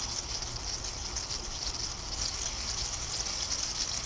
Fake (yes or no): no